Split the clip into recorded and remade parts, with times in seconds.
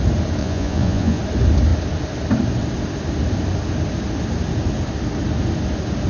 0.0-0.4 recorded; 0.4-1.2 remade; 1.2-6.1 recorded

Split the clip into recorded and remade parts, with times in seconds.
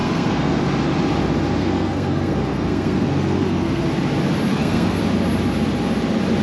0.0-0.6 remade; 0.6-1.6 recorded; 1.6-3.8 remade; 3.8-4.5 recorded; 4.5-5.0 remade; 5.0-6.4 recorded